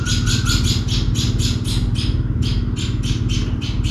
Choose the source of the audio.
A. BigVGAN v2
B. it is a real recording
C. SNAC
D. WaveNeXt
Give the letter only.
B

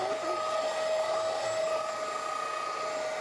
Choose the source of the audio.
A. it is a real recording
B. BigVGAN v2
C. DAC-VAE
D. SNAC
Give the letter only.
A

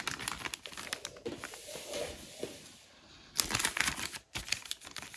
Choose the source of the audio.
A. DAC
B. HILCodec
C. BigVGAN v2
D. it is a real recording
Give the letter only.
C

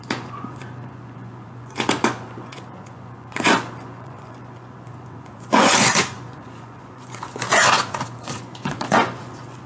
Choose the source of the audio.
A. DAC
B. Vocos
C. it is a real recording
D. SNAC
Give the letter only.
B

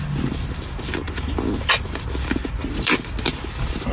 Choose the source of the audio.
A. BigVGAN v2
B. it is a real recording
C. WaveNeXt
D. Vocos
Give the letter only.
B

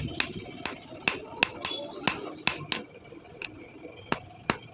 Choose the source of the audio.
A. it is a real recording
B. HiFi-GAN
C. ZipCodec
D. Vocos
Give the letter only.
A